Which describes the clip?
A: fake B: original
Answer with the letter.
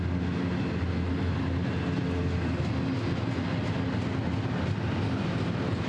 B